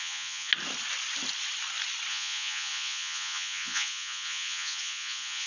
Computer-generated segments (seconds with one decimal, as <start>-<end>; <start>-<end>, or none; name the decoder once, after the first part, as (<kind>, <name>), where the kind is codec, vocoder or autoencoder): 0.0-0.5 (vocoder, Vocos); 2.1-5.5